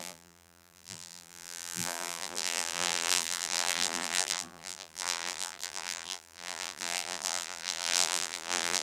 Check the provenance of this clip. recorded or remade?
remade